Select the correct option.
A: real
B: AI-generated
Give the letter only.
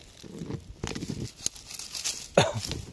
A